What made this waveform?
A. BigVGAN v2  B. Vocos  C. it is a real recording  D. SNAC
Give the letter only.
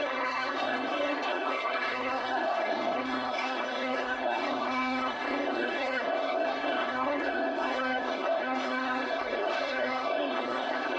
D